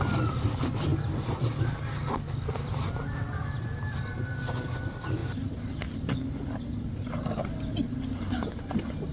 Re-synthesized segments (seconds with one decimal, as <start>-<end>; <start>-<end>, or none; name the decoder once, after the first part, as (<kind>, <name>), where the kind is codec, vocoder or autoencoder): 5.2-7.5 (vocoder, BigVGAN v2)